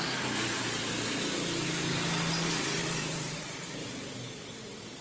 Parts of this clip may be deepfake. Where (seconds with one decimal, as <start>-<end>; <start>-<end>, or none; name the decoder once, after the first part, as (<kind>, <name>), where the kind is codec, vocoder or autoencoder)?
2.8-4.4 (vocoder, BigVGAN v2)